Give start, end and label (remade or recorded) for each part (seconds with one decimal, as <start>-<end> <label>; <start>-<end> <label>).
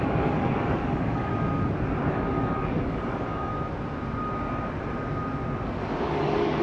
0.0-1.3 remade; 1.3-2.1 recorded; 2.1-3.5 remade; 3.5-6.0 recorded; 6.0-6.6 remade